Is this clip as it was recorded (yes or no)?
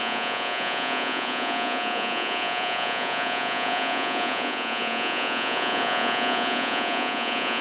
no